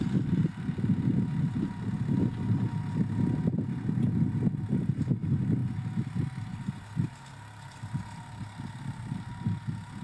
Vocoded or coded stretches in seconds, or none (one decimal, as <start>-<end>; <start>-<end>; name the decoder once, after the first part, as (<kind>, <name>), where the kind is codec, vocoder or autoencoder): none